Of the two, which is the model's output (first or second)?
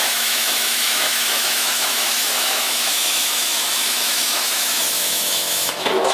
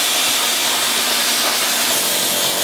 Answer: first